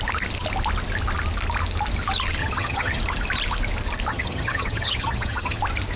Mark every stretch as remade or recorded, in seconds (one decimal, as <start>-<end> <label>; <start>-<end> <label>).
0.0-2.4 recorded; 2.4-3.0 remade; 3.0-4.1 recorded; 4.1-5.6 remade; 5.6-6.0 recorded